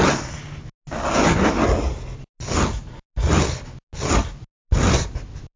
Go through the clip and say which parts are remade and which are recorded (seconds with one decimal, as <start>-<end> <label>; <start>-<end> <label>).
0.0-5.6 recorded